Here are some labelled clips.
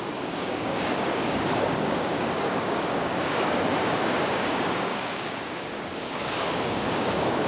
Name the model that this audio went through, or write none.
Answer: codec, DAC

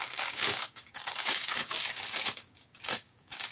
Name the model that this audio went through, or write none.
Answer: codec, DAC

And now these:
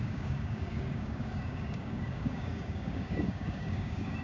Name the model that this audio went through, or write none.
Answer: codec, DAC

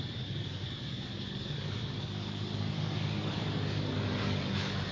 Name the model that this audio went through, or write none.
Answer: codec, DAC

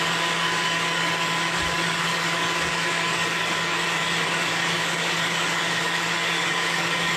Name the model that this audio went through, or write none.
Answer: codec, DAC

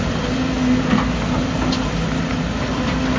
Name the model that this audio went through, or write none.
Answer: none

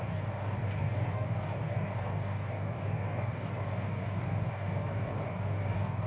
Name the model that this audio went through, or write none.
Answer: codec, DAC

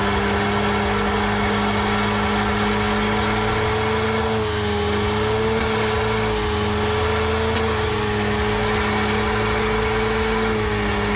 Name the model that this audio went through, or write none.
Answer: none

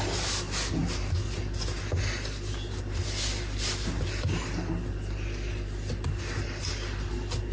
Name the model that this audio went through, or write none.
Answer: none